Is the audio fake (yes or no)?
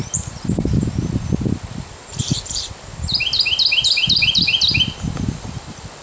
yes